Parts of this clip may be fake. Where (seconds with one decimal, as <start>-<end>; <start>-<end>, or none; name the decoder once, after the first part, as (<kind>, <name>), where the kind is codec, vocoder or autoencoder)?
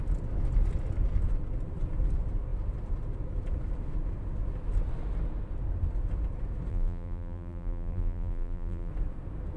6.7-8.9 (vocoder, BigVGAN v2)